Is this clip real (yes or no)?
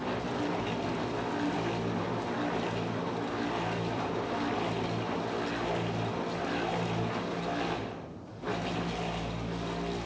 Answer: yes